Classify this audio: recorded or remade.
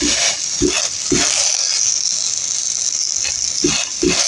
recorded